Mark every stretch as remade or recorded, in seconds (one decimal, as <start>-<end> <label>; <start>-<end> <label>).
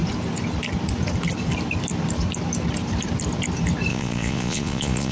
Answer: 0.0-3.9 recorded; 3.9-5.1 remade